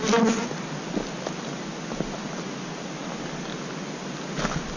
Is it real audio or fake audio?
real